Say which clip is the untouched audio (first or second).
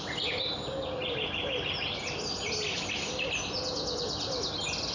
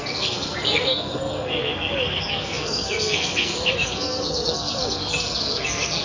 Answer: first